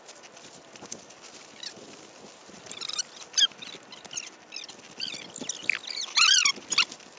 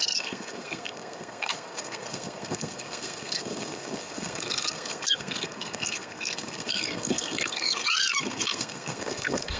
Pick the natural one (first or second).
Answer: first